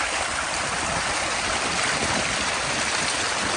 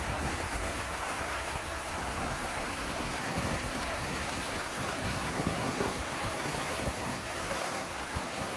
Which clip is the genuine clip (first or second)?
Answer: first